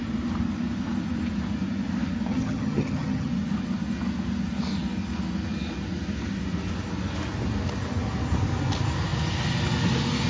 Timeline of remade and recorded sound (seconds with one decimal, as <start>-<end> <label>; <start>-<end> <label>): 0.0-2.3 recorded; 2.3-3.3 remade; 3.3-10.3 recorded